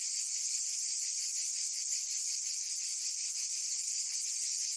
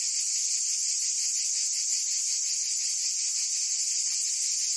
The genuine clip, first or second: second